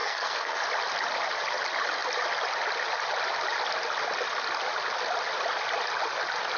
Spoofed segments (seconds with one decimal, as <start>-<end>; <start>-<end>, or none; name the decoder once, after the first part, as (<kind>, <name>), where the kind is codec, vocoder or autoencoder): 0.0-0.6 (codec, SNAC)